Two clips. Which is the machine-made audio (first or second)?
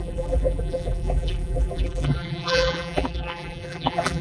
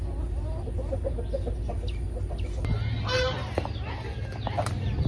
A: first